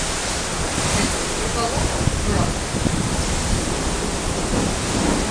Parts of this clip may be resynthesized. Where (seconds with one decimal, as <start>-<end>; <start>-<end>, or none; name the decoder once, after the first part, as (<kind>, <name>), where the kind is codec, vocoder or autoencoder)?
none